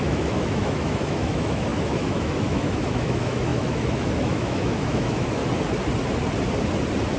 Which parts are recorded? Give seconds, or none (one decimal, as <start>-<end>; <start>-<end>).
5.4-7.2